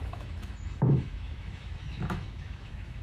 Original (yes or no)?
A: no